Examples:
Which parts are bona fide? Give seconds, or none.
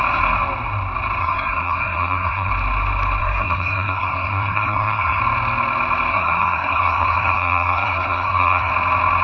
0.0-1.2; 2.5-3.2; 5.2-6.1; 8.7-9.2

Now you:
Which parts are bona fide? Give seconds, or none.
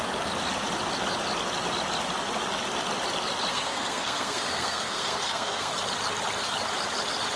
0.0-3.5; 5.7-7.4